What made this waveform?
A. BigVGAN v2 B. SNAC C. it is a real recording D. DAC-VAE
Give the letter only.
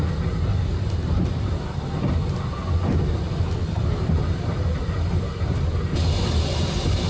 C